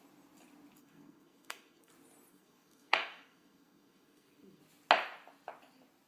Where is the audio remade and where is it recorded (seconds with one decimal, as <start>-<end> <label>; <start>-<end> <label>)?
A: 0.0-0.8 recorded; 0.8-1.9 remade; 1.9-2.3 recorded; 2.3-4.6 remade; 4.6-6.1 recorded